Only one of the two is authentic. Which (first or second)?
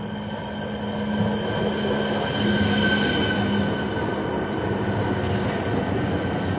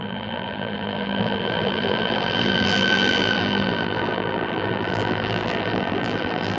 first